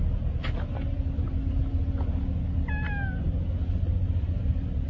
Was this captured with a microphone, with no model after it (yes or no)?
yes